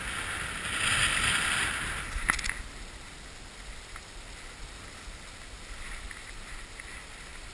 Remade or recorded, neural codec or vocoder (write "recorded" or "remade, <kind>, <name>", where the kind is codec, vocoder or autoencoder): recorded